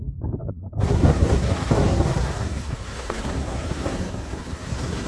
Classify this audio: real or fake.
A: fake